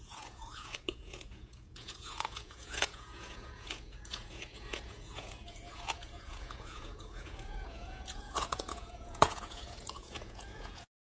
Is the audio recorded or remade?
remade